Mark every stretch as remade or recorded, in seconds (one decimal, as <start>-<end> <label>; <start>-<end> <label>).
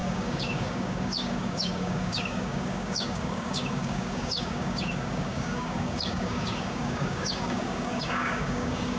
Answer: 0.0-9.0 remade